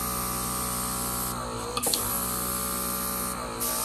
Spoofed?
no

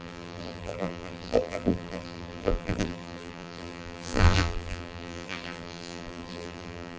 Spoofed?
yes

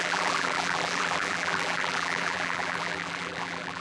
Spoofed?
yes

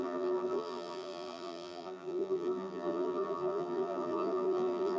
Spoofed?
yes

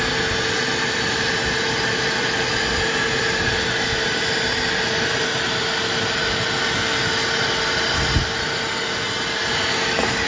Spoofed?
no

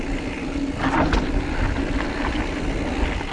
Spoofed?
no